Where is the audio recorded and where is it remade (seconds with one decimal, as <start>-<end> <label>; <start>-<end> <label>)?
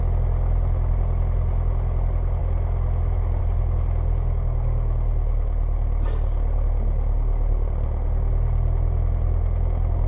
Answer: 0.0-10.1 recorded